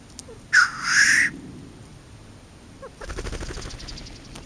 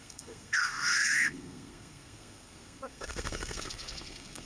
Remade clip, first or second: second